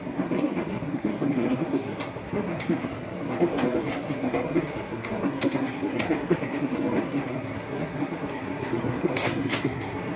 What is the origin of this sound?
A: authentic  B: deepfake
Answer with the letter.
B